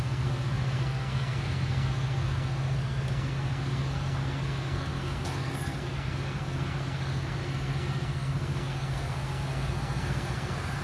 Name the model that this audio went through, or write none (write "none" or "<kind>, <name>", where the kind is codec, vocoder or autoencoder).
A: codec, SNAC